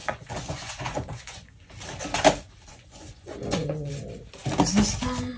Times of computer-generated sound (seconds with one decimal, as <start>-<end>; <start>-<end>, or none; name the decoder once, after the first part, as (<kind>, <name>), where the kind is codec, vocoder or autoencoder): 0.0-1.7 (vocoder, Vocos); 2.7-3.9